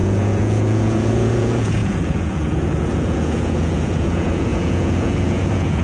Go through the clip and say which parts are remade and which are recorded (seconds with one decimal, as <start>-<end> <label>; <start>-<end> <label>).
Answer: 0.0-5.8 remade